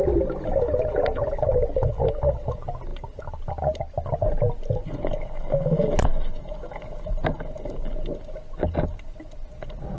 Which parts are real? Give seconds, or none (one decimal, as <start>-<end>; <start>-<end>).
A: 0.0-10.0